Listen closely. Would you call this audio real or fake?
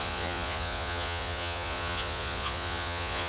fake